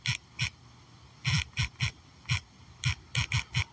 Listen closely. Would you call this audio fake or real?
real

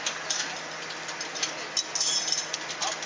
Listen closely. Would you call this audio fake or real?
real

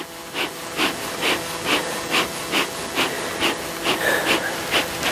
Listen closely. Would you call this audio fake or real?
real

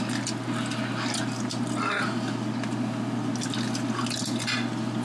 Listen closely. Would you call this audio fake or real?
real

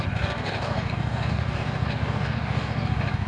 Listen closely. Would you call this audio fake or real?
fake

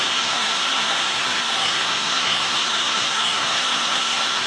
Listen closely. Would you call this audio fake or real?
fake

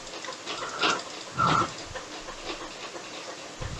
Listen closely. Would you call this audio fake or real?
real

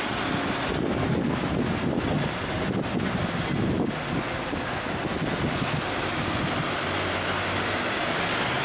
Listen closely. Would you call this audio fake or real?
real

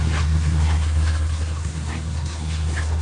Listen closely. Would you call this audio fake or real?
fake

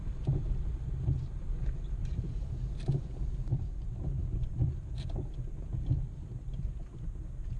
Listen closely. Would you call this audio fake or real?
real